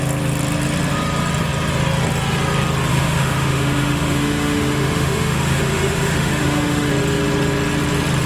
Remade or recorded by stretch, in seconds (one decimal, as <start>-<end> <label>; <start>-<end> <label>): 0.0-2.9 recorded; 2.9-6.9 remade; 6.9-8.3 recorded